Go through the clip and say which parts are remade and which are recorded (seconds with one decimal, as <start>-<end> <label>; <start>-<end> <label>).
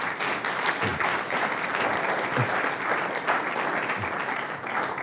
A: 0.0-5.0 recorded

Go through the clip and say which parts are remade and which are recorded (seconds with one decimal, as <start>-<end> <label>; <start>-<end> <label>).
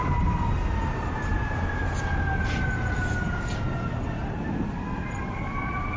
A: 0.0-6.0 recorded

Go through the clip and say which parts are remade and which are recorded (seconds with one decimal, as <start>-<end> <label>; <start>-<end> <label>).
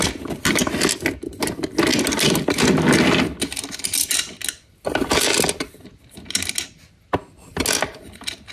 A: 0.0-8.5 recorded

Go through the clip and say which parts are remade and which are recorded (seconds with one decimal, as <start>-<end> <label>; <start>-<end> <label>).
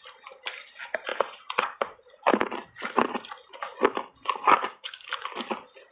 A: 0.0-4.4 recorded; 4.4-5.1 remade; 5.1-5.9 recorded